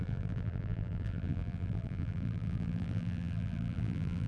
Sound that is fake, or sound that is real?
fake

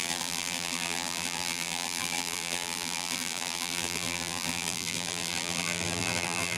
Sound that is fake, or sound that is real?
fake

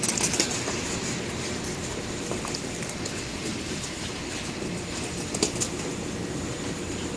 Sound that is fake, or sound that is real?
fake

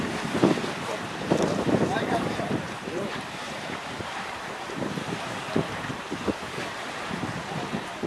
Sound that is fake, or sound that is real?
fake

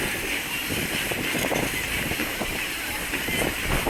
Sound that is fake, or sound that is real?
real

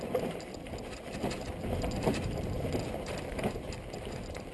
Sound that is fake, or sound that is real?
real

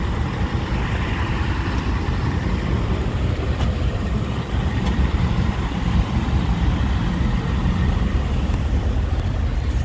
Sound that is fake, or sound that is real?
fake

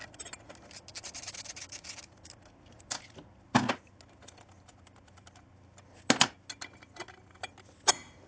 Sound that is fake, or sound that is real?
real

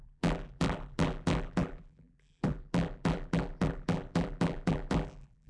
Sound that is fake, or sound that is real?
fake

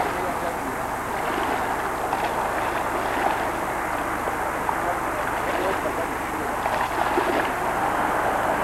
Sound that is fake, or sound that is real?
real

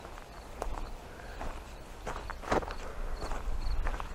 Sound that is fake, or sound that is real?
real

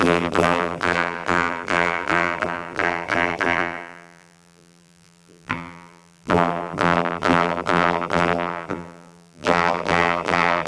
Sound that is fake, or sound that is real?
fake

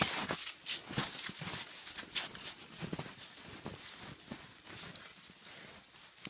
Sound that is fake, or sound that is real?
real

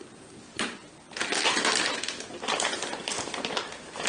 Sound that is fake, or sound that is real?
real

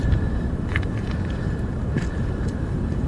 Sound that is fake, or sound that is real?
fake